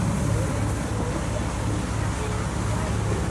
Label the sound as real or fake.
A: real